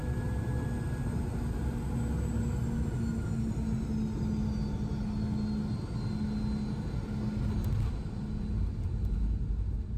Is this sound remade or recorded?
recorded